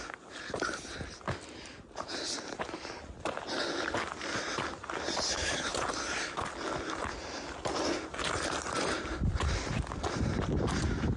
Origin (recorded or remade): recorded